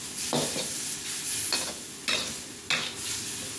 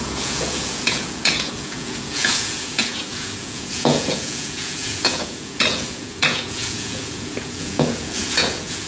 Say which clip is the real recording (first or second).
first